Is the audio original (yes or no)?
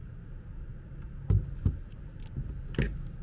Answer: yes